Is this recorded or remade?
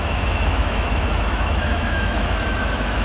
remade